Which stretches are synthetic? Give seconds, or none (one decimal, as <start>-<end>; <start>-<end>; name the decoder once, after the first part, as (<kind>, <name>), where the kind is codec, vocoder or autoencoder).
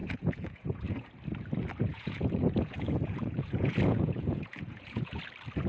0.0-1.1 (vocoder, Vocos); 1.8-5.2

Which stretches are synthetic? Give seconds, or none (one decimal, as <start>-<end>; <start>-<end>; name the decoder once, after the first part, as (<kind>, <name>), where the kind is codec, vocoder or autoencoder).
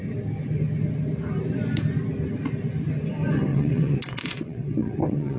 3.5-5.4 (vocoder, WaveNeXt)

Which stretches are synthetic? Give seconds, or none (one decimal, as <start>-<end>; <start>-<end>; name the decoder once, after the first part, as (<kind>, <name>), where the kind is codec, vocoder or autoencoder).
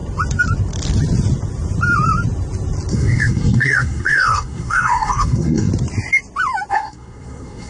2.9-5.7 (codec, SNAC); 6.7-7.7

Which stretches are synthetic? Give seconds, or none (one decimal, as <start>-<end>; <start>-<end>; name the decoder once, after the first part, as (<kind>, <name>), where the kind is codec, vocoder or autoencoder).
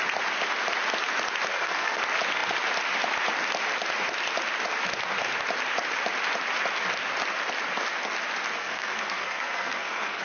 1.5-2.0 (codec, SNAC); 8.6-10.2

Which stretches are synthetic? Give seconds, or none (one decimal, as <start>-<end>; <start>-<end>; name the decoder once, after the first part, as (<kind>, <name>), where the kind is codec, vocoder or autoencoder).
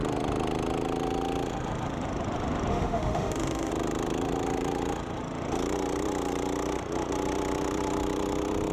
2.7-3.7 (autoencoder, DAC-VAE)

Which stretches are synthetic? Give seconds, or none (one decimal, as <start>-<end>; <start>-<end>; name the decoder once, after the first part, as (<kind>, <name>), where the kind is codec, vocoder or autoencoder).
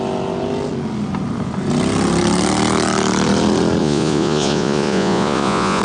3.8-5.8 (vocoder, Vocos)